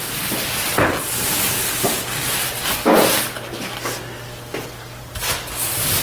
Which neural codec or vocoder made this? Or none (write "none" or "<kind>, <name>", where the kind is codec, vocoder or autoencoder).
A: none